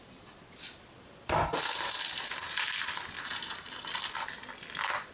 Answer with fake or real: fake